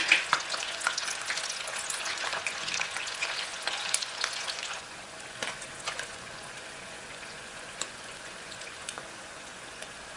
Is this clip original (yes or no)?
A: no